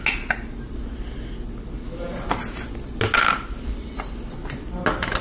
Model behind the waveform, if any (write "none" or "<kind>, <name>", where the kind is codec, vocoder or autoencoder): none